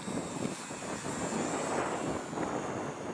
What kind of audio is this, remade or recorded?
recorded